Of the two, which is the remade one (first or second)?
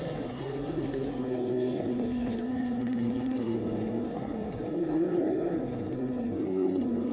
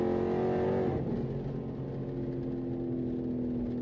first